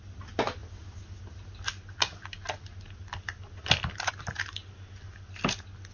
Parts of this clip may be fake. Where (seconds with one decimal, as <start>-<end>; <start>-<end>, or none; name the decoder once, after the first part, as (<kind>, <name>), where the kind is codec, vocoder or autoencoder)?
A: none